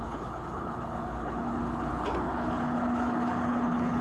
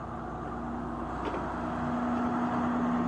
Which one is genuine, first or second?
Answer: second